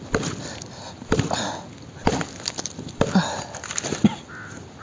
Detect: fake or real real